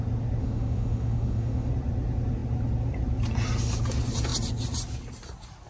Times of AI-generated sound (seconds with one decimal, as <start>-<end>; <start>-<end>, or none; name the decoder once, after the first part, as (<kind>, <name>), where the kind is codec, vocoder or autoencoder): 0.4-1.7 (autoencoder, DAC-VAE)